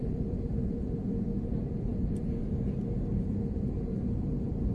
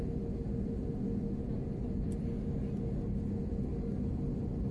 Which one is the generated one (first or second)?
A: first